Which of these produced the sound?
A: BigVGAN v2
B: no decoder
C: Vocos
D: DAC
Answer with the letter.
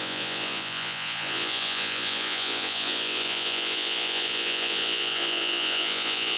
C